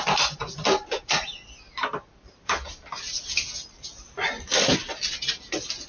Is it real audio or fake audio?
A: real